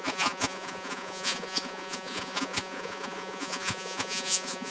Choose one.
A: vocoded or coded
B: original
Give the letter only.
A